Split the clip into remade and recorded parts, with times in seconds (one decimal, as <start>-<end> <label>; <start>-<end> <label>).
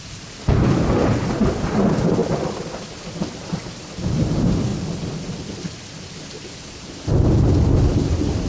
0.0-8.5 recorded